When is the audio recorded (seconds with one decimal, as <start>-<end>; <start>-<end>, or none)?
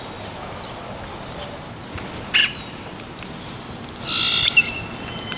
0.0-5.4